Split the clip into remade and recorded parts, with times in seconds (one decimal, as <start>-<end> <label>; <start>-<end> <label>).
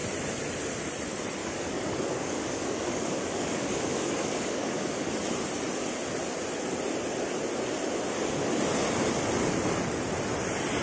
0.0-1.4 recorded; 1.4-5.1 remade; 5.1-10.8 recorded